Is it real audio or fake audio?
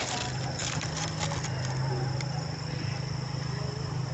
real